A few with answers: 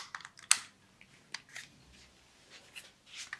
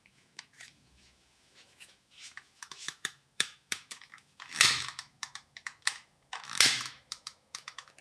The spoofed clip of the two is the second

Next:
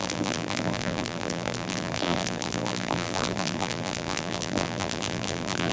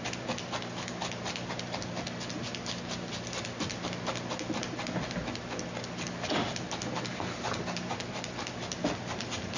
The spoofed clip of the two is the first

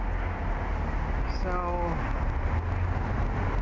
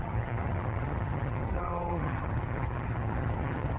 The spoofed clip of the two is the second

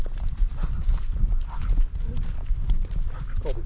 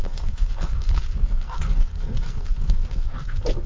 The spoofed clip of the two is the second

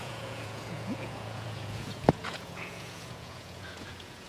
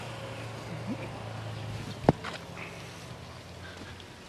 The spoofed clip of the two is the first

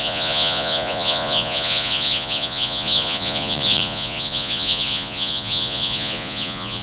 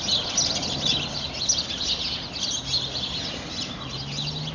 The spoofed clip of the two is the first